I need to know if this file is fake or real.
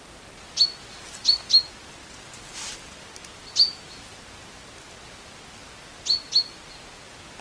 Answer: real